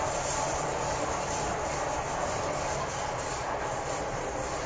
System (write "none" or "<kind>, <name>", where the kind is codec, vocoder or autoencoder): none